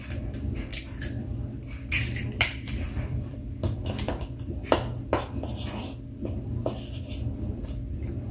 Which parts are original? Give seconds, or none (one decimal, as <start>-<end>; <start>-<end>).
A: 0.0-0.7; 4.2-8.3